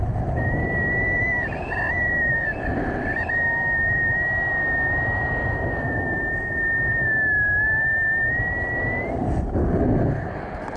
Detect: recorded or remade recorded